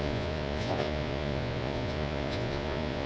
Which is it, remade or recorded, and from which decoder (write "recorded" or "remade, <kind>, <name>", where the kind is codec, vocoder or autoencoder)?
remade, vocoder, Vocos